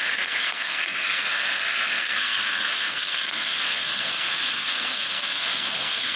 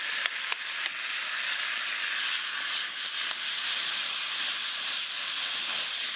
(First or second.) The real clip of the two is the second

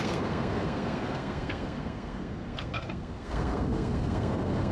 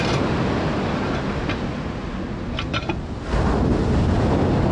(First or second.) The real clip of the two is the second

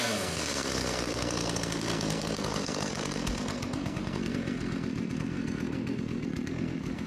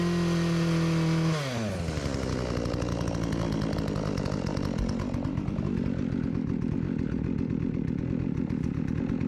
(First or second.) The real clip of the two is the second